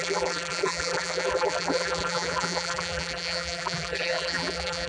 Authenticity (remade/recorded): remade